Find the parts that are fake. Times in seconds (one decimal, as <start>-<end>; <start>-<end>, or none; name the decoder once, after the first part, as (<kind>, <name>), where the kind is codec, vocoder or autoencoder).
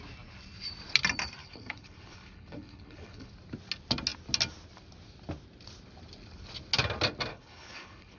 1.4-3.3 (codec, HILCodec); 7.3-8.2